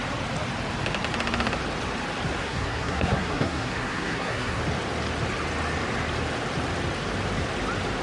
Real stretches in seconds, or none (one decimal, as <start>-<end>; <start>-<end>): 0.0-2.4; 4.6-8.0